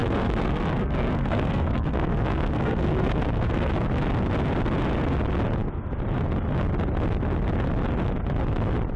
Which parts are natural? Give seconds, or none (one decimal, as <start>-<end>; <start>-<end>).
3.7-9.0